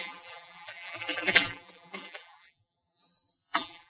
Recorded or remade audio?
remade